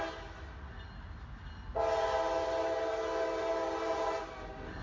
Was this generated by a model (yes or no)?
no